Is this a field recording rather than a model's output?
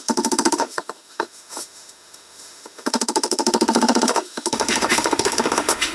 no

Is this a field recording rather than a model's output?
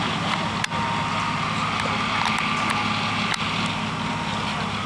yes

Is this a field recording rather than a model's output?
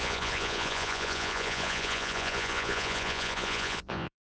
no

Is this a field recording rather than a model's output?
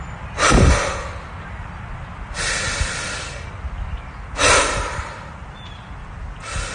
yes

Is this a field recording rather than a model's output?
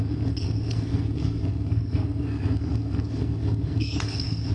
no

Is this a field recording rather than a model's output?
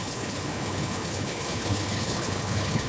no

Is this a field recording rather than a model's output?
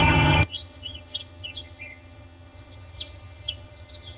no